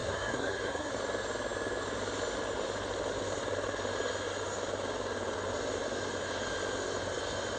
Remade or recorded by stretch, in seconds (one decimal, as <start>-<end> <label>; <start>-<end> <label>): 0.0-0.9 remade; 0.9-7.6 recorded